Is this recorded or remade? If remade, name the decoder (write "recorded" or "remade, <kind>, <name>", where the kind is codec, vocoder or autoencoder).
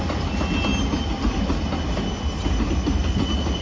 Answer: recorded